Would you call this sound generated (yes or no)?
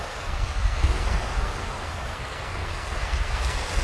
yes